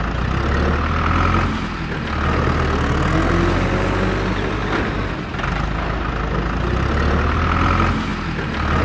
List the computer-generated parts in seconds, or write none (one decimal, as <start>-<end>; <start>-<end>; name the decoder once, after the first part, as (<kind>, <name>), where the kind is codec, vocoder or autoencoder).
none